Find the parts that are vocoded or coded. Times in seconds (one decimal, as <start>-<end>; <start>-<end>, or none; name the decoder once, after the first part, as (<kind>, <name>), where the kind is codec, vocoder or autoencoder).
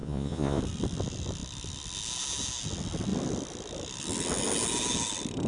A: 0.0-0.6 (vocoder, Vocos)